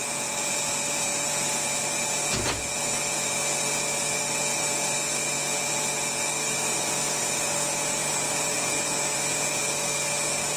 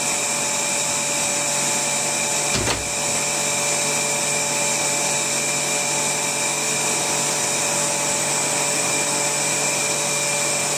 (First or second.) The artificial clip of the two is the first